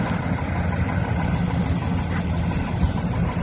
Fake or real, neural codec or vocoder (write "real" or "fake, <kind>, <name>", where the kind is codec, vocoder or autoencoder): real